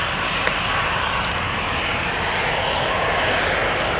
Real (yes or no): yes